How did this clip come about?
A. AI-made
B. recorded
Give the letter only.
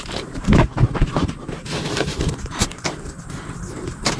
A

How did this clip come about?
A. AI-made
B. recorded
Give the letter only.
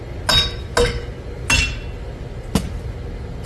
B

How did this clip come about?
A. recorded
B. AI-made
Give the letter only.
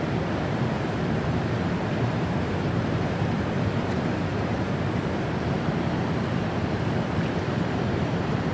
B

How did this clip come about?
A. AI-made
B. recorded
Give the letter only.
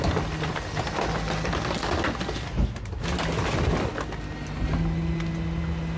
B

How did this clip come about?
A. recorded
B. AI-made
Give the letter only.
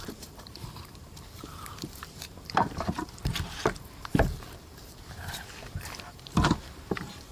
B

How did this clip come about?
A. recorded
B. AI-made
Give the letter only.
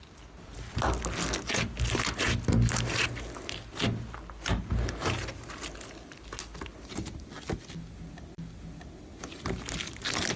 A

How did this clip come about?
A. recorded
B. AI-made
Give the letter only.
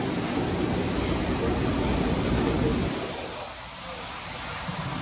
A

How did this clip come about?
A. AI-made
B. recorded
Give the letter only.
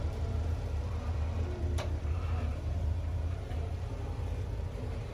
A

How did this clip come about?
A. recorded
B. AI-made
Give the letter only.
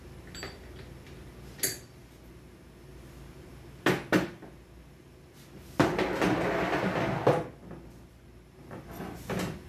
A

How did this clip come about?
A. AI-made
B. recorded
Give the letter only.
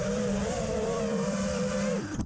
A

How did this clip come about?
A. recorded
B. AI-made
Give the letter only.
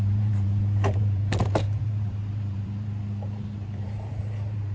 B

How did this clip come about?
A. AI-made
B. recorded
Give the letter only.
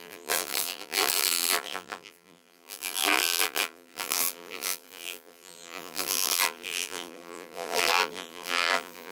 A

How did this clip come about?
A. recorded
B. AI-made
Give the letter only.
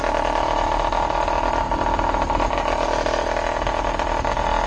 A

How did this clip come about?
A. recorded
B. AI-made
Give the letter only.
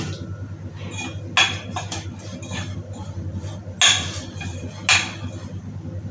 A